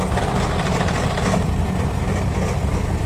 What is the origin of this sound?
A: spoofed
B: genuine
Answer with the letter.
B